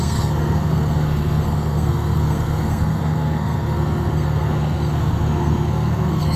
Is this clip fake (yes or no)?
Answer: yes